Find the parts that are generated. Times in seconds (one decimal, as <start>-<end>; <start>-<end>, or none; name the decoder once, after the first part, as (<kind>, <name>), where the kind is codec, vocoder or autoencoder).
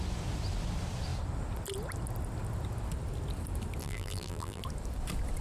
3.8-4.6 (vocoder, BigVGAN v2)